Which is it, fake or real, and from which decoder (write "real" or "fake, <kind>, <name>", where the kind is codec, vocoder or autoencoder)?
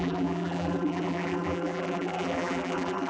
fake, vocoder, BigVGAN v2